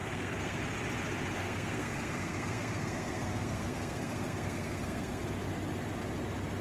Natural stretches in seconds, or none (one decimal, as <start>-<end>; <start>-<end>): 0.6-1.4; 5.2-6.6